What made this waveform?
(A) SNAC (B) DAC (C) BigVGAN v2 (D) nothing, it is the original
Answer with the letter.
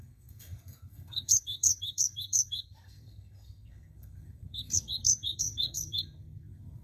A